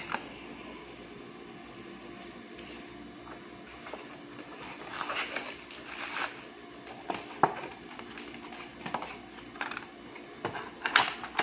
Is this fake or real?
real